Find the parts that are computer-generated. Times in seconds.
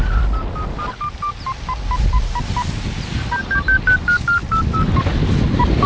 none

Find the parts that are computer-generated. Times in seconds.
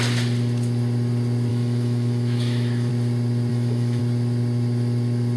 1.5-2.9 (autoencoder, DAC-VAE); 3.5-4.0